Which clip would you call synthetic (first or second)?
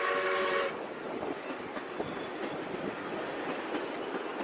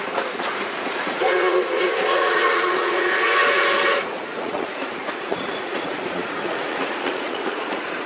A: second